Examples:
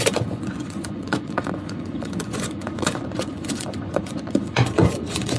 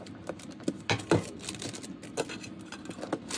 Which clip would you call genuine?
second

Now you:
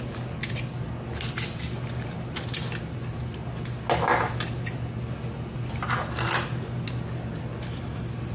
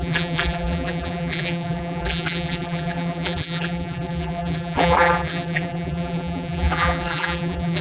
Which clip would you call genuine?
first